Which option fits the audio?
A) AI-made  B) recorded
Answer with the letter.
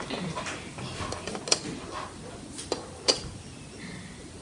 B